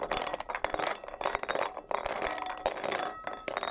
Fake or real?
real